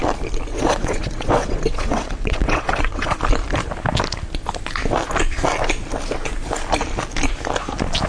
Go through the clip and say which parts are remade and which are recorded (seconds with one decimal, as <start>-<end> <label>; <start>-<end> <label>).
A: 0.0-0.5 recorded; 0.5-3.2 remade; 3.2-8.1 recorded